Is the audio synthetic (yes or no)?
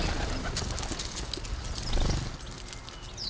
no